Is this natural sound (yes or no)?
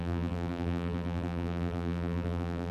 no